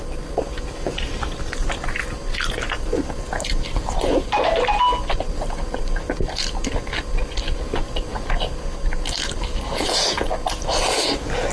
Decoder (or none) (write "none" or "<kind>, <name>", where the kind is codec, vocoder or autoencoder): none